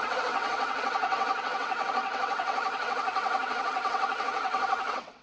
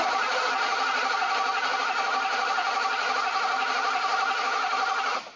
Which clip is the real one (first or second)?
second